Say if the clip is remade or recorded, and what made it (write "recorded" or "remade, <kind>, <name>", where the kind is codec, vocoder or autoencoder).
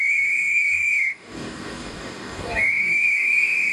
remade, codec, DAC